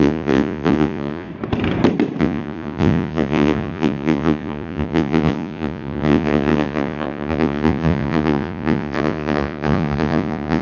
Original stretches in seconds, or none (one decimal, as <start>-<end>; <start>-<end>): 1.3-2.2